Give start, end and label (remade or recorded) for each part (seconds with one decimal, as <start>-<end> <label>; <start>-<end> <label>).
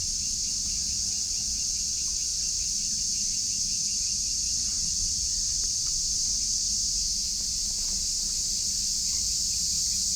0.0-0.8 remade; 0.8-2.3 recorded; 2.3-3.0 remade; 3.0-5.3 recorded; 5.3-8.4 remade; 8.4-10.2 recorded